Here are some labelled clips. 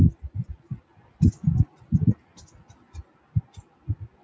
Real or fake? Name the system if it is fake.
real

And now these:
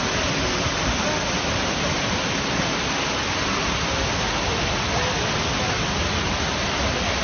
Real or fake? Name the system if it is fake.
real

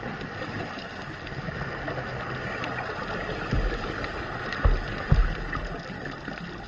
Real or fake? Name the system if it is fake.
real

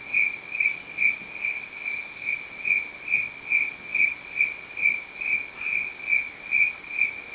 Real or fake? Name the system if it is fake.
real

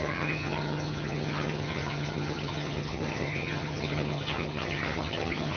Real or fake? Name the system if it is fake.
fake, vocoder, HiFi-GAN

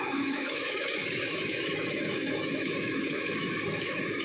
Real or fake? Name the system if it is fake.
fake, autoencoder, DAC-VAE